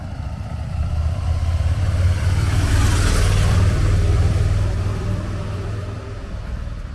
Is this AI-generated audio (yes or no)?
yes